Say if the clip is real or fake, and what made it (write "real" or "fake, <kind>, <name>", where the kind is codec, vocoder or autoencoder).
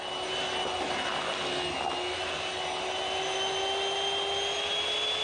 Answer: real